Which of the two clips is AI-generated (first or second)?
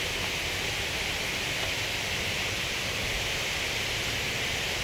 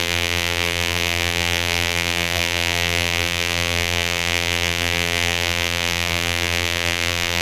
second